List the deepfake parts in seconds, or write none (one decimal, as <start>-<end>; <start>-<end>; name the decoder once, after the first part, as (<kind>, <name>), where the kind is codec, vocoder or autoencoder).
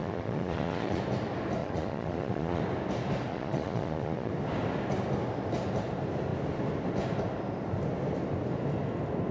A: 0.0-1.0 (vocoder, Vocos); 1.6-2.6; 3.3-4.3